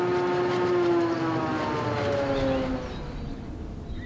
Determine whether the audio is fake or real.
real